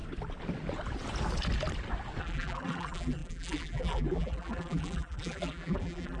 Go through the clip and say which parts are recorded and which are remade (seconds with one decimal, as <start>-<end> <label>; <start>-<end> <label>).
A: 0.0-2.2 recorded; 2.2-6.2 remade